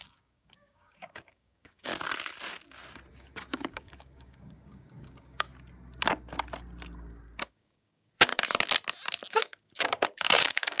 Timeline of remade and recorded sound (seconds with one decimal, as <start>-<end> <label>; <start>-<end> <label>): 0.0-1.9 remade; 1.9-3.1 recorded; 3.1-5.5 remade; 5.5-7.4 recorded; 7.4-8.3 remade; 8.3-9.3 recorded; 9.3-10.8 remade